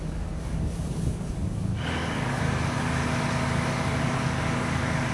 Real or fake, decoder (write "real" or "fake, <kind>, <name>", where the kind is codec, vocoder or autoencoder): fake, codec, DAC